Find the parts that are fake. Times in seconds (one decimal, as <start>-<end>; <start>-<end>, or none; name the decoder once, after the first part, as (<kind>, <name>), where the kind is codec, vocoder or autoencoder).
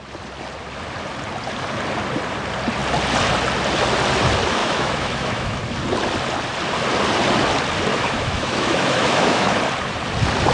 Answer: 4.6-5.6 (autoencoder, DAC-VAE); 7.9-9.6